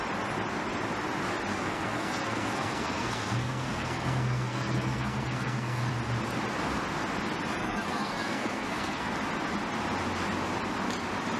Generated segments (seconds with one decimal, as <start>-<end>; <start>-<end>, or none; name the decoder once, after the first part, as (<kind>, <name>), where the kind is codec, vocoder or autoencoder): 1.5-5.9 (codec, SNAC); 7.6-9.1